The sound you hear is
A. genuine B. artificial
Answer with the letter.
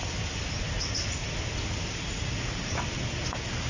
A